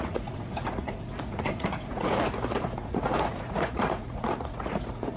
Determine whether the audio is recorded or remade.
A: remade